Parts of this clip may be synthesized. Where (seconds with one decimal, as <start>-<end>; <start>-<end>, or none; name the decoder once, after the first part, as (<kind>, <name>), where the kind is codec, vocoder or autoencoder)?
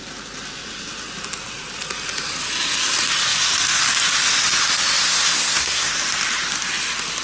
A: 5.0-6.0 (codec, SNAC)